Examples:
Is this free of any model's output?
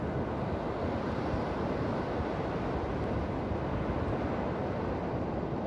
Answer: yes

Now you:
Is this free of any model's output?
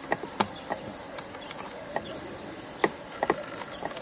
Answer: yes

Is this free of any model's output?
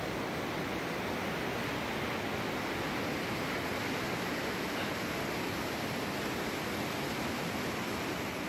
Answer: yes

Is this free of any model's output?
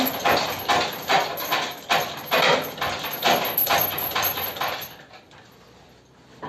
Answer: yes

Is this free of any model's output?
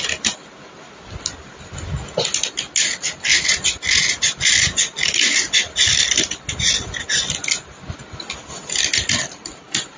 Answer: yes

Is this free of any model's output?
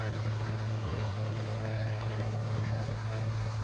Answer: no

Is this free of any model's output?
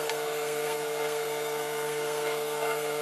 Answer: no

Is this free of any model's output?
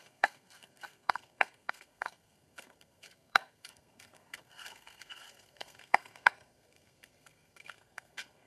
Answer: no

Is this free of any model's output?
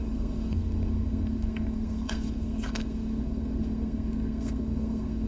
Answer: no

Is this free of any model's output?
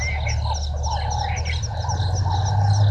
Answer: yes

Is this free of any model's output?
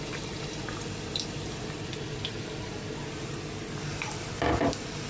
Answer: yes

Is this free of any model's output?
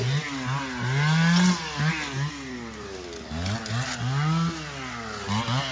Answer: yes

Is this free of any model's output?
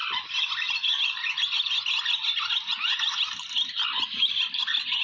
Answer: yes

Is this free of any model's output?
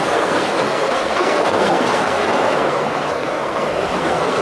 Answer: no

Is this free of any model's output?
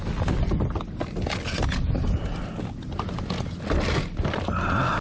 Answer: yes